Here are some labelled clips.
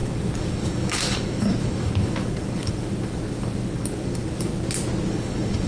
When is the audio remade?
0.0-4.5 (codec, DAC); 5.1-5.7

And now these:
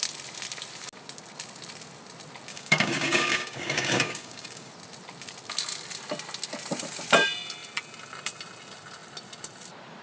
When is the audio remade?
2.5-4.7 (codec, DAC)